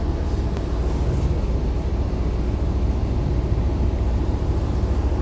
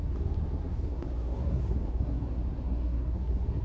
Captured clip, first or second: first